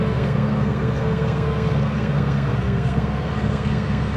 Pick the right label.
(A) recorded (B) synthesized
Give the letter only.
B